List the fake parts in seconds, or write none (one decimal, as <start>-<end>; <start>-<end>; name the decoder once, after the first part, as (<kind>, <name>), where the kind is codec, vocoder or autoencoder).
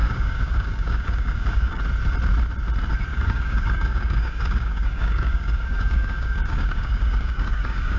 0.0-1.8 (codec, DAC); 3.1-8.0